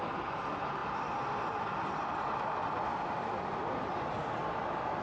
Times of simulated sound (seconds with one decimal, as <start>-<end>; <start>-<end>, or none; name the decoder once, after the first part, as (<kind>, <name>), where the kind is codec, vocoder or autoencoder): none